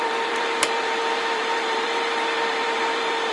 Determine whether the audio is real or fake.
fake